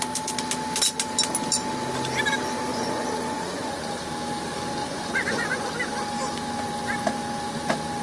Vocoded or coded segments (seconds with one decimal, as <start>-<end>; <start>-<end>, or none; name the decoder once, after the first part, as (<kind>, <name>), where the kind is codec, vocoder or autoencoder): 2.7-4.0 (vocoder, Vocos); 4.8-5.7